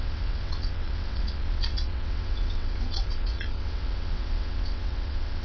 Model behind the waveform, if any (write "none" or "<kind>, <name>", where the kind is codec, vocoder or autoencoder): vocoder, WaveNeXt